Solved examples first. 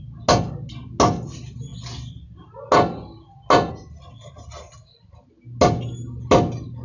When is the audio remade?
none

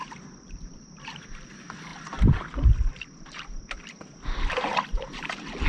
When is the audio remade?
0.0-1.2 (vocoder, BigVGAN v2); 1.9-5.3

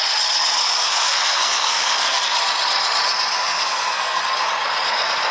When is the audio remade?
0.6-2.2 (codec, SNAC); 3.4-4.2

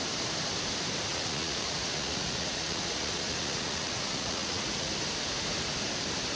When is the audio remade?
1.1-4.9 (vocoder, Vocos)

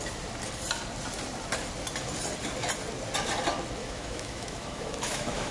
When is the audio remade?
3.8-5.5 (autoencoder, DAC-VAE)

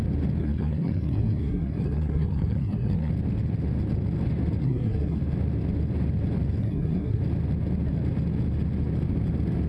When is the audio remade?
0.4-3.1 (codec, SNAC); 4.6-5.2; 6.6-7.2